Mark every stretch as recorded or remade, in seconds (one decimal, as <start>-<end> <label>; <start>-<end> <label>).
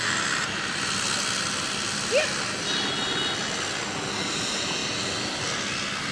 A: 0.0-6.1 recorded